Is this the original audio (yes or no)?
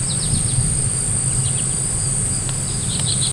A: yes